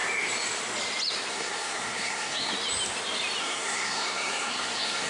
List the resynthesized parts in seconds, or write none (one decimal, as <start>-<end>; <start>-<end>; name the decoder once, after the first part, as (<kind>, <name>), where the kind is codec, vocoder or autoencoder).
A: 1.3-2.5 (codec, SNAC); 3.4-5.1